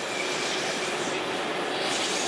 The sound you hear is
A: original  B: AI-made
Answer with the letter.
A